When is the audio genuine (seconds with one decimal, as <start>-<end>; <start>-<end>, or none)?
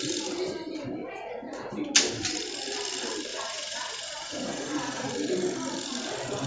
0.0-1.0; 1.7-3.3; 5.1-6.5